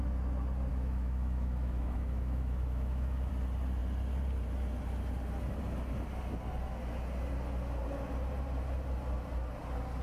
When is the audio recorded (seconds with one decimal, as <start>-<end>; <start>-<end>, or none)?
0.0-0.7; 3.3-10.0

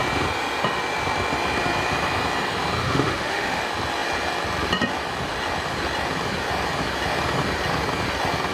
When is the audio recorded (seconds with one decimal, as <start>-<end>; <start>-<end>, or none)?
0.0-2.8; 3.6-8.5

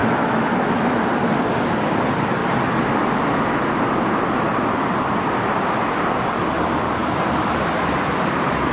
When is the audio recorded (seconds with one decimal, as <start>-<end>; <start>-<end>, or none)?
1.1-8.7